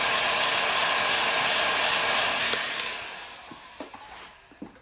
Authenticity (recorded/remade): recorded